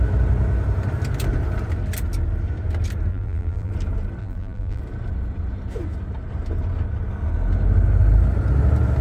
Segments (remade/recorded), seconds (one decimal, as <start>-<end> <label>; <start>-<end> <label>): 0.0-3.1 recorded; 3.1-3.7 remade; 3.7-4.2 recorded; 4.2-4.8 remade; 4.8-9.0 recorded

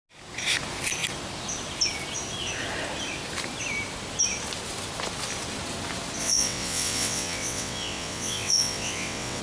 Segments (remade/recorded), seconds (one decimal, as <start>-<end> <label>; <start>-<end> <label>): 0.0-6.2 recorded; 6.2-9.4 remade

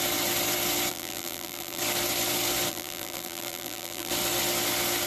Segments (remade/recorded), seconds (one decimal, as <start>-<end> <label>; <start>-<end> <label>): 0.0-0.9 recorded; 0.9-1.8 remade; 1.8-2.7 recorded; 2.7-4.1 remade; 4.1-5.1 recorded